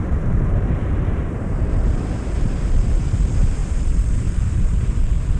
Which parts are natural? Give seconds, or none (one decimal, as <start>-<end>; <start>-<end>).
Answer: none